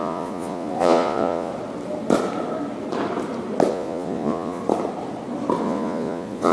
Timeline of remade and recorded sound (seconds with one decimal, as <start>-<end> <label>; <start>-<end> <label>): 0.0-1.5 remade; 1.5-3.7 recorded; 3.7-4.6 remade; 4.6-5.6 recorded; 5.6-6.5 remade